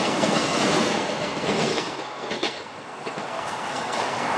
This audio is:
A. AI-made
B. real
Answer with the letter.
A